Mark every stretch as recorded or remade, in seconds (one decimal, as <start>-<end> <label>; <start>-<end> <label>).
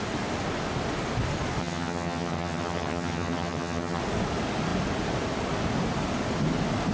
0.0-1.6 recorded; 1.6-4.0 remade; 4.0-6.9 recorded